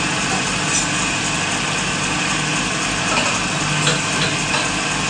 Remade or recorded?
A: recorded